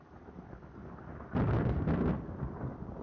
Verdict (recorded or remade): recorded